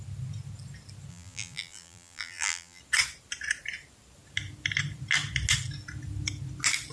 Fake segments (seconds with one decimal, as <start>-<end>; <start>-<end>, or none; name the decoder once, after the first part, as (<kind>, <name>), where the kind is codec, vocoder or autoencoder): 1.1-2.8 (vocoder, BigVGAN v2)